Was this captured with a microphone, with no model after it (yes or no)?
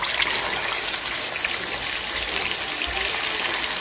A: yes